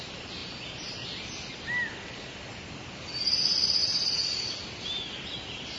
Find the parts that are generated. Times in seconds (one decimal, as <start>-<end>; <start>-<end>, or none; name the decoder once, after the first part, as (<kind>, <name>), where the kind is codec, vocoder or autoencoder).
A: none